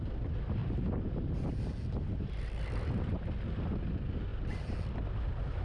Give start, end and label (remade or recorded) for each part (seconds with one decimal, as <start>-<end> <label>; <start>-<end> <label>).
0.0-5.6 recorded